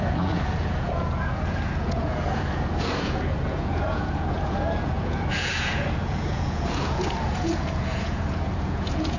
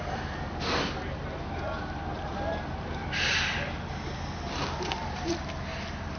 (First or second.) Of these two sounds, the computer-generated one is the first